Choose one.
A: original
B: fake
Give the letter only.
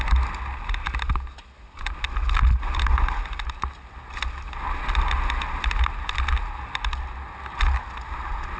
A